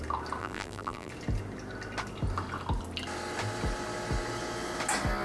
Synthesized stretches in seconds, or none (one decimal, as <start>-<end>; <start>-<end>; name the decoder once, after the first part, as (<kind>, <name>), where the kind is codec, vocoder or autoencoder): 0.4-1.1 (vocoder, BigVGAN v2)